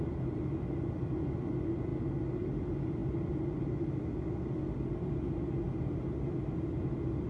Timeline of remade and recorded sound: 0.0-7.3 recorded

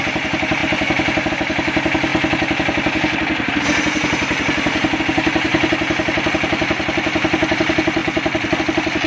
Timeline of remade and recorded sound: 0.0-2.1 remade; 2.1-5.0 recorded; 5.0-5.5 remade; 5.5-6.3 recorded; 6.3-8.0 remade; 8.0-8.6 recorded; 8.6-9.1 remade

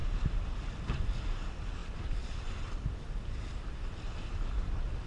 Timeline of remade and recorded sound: 0.0-0.6 remade; 0.6-1.8 recorded; 1.8-5.1 remade

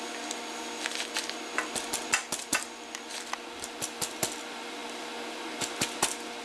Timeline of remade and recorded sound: 0.0-6.4 recorded

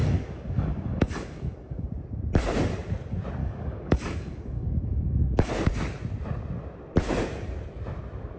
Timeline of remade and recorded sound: 0.0-1.9 remade; 1.9-3.4 recorded; 3.4-5.5 remade; 5.5-8.4 recorded

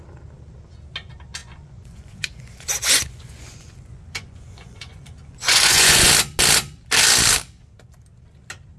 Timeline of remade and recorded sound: 0.0-1.4 recorded; 1.4-6.1 remade; 6.1-8.8 recorded

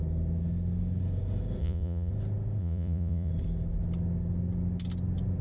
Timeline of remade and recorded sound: 0.0-1.6 recorded; 1.6-2.1 remade; 2.1-2.6 recorded; 2.6-3.3 remade; 3.3-5.4 recorded